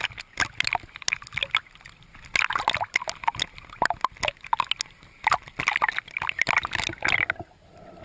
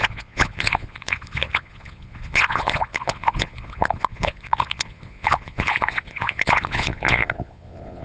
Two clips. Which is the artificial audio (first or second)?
second